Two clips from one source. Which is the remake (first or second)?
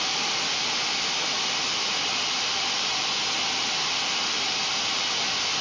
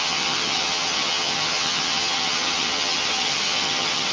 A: second